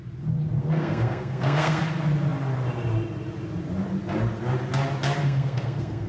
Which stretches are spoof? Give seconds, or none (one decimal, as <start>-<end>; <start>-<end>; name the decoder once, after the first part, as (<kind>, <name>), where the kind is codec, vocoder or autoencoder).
0.6-1.8 (codec, SNAC); 5.2-6.1